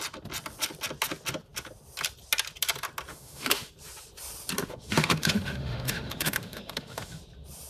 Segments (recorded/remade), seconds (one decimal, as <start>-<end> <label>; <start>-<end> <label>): 0.0-3.1 recorded; 3.1-3.7 remade; 3.7-4.6 recorded; 4.6-7.2 remade; 7.2-7.7 recorded